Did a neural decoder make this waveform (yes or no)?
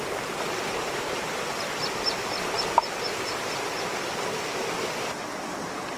no